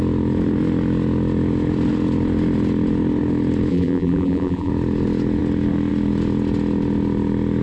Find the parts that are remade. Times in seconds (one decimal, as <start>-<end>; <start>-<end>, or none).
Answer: 3.7-4.7